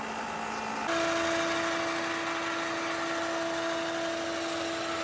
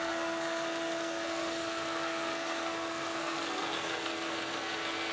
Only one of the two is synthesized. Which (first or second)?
second